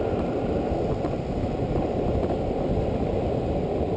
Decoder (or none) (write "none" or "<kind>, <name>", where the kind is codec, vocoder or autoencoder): none